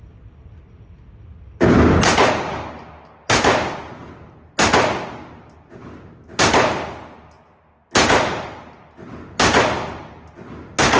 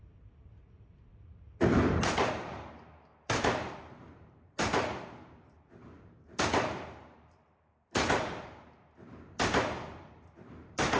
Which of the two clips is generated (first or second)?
second